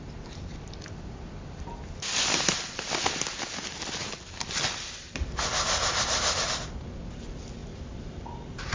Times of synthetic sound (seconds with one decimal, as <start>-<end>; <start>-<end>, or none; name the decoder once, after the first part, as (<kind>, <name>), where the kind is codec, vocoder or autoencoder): none